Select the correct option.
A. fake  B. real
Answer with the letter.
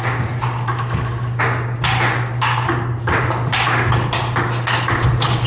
B